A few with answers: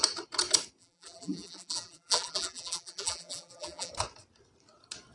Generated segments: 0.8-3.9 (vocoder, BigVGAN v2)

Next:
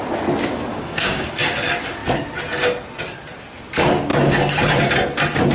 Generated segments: 0.7-1.3 (codec, DAC)

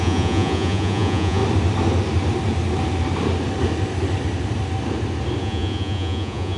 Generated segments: 0.0-1.4 (vocoder, Vocos); 5.4-6.6

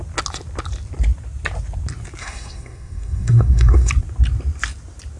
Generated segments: 2.2-3.9 (codec, SNAC)